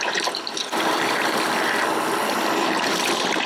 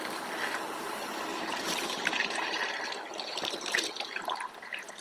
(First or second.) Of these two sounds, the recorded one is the first